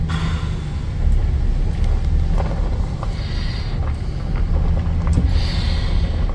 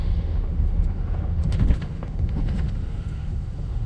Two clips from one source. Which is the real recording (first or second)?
first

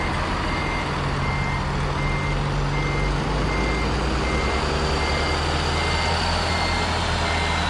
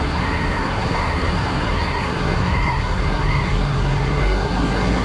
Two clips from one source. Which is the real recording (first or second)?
first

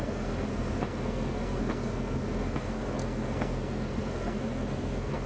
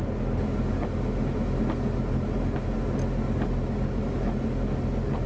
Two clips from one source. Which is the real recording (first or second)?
second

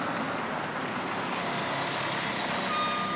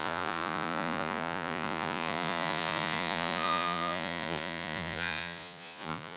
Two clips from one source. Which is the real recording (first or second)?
first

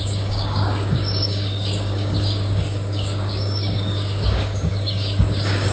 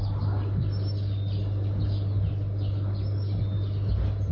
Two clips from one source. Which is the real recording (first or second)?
second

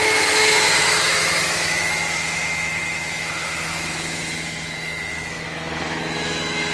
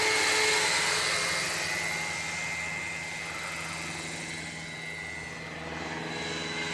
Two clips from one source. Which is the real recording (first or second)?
second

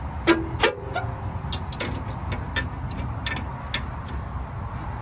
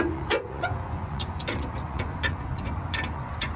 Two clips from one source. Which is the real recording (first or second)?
first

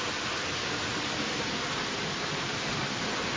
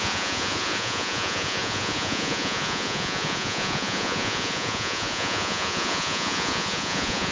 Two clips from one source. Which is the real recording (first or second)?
first